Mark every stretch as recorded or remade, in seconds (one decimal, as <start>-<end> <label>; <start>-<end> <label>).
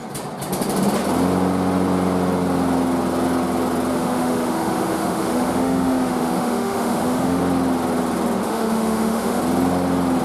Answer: 0.0-3.9 recorded; 3.9-7.4 remade; 7.4-8.4 recorded; 8.4-9.4 remade; 9.4-10.2 recorded